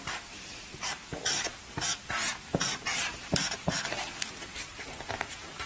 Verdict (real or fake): fake